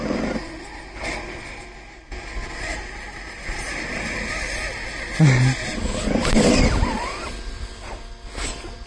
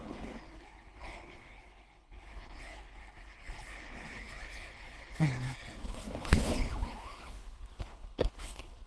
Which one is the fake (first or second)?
second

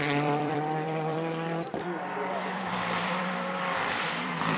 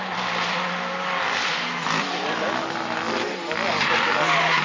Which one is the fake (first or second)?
first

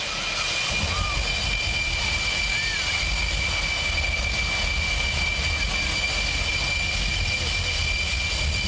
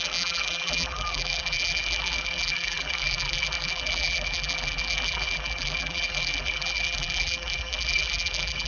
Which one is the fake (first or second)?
second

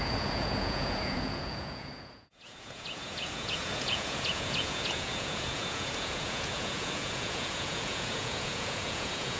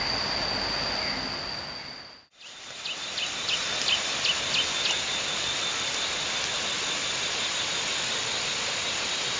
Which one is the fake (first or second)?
first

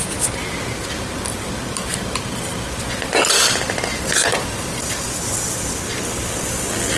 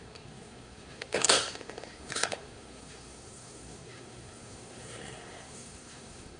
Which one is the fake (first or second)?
second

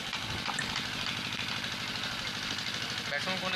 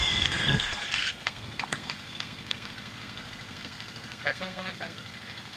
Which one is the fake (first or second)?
second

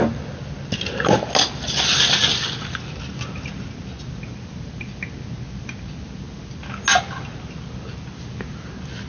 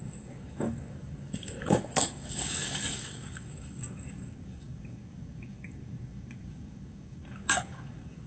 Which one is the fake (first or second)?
second